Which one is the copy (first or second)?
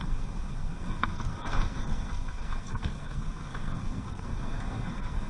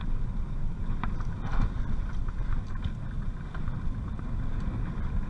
first